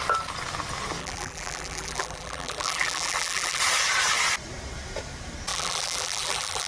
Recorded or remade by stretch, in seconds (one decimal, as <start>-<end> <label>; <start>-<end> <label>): 0.0-1.0 recorded; 1.0-3.6 remade; 3.6-5.5 recorded; 5.5-6.7 remade